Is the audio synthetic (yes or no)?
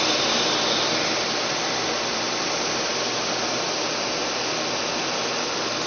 no